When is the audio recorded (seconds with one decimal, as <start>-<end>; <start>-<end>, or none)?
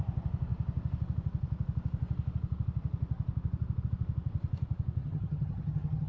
0.0-5.0